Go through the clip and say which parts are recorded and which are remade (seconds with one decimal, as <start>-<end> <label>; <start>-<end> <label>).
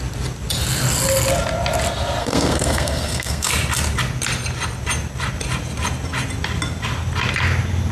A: 0.0-2.2 recorded; 2.2-3.5 remade; 3.5-7.9 recorded